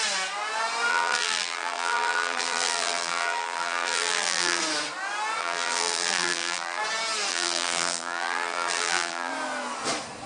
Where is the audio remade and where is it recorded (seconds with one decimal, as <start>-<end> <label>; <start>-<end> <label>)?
0.0-0.9 recorded; 0.9-4.6 remade; 4.6-5.4 recorded; 5.4-6.8 remade; 6.8-7.3 recorded; 7.3-9.3 remade; 9.3-10.3 recorded